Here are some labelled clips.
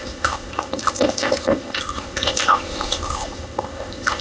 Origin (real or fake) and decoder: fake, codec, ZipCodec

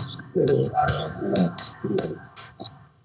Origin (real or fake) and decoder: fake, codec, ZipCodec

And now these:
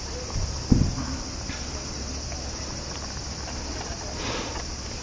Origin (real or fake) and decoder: real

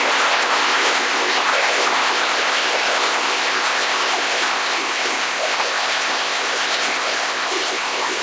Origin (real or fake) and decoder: fake, codec, ZipCodec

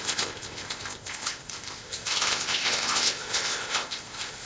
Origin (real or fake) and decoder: fake, codec, ZipCodec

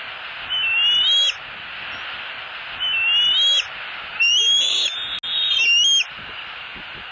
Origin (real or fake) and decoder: real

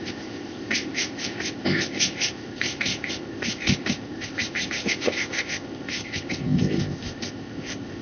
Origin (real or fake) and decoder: fake, codec, ZipCodec